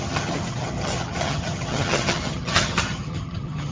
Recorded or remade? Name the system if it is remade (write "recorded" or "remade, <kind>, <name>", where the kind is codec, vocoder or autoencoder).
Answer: remade, vocoder, HiFi-GAN